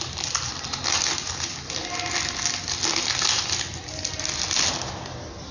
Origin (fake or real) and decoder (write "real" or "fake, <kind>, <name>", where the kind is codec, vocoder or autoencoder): real